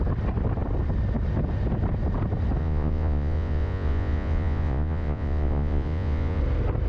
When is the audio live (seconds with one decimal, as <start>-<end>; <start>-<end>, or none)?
0.0-2.6; 6.4-6.9